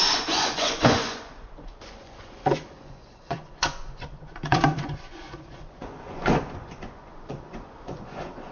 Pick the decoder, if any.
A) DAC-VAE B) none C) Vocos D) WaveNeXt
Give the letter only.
C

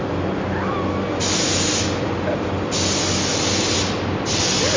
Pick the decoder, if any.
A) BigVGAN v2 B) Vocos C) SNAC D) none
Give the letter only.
D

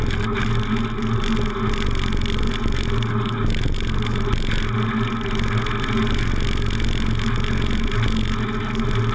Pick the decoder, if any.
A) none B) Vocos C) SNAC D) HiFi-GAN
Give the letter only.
A